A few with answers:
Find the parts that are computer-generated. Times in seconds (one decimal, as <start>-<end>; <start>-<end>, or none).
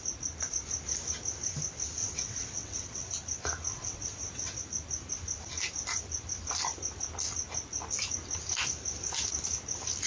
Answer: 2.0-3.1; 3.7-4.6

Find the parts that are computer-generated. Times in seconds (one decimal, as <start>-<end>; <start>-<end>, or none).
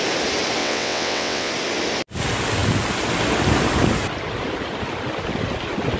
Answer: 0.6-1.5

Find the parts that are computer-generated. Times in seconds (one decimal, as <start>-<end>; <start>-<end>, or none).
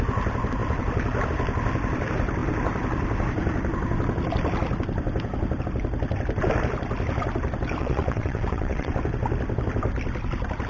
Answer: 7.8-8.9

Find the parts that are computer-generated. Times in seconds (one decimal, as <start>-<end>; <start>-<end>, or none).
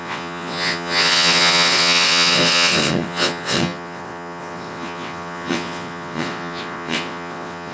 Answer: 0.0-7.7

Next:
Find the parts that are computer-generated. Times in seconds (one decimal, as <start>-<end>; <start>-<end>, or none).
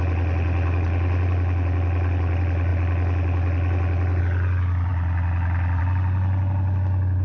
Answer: none